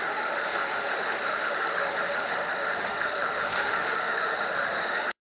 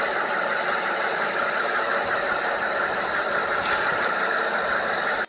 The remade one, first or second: first